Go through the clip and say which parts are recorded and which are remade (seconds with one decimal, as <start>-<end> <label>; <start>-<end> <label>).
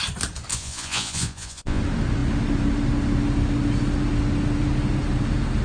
0.0-0.5 recorded; 0.5-1.8 remade; 1.8-5.6 recorded